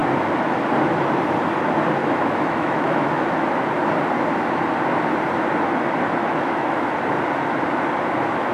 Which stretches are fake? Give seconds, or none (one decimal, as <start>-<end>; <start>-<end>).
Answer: 2.0-3.2; 6.2-6.9